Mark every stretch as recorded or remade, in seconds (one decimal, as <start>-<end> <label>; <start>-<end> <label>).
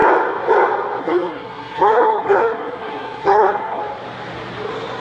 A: 0.0-1.0 recorded; 1.0-3.8 remade; 3.8-5.0 recorded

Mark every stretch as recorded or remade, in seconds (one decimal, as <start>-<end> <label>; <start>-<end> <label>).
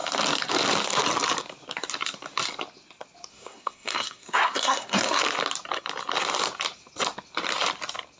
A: 0.0-3.3 recorded; 3.3-5.2 remade; 5.2-8.2 recorded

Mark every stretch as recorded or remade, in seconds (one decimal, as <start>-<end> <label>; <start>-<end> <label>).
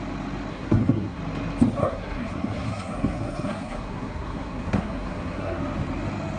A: 0.0-0.5 recorded; 0.5-1.2 remade; 1.2-1.8 recorded; 1.8-5.6 remade; 5.6-6.4 recorded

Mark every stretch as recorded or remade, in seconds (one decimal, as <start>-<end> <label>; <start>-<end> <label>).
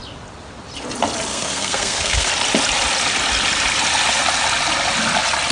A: 0.0-1.3 recorded; 1.3-2.3 remade; 2.3-5.5 recorded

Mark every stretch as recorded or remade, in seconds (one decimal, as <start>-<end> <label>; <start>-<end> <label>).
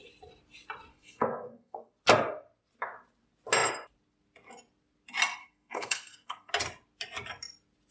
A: 0.0-0.9 recorded; 0.9-1.9 remade; 1.9-5.4 recorded; 5.4-6.5 remade; 6.5-7.9 recorded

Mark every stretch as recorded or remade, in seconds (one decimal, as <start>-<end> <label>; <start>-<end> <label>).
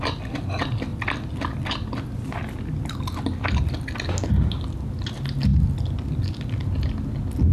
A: 0.0-7.5 recorded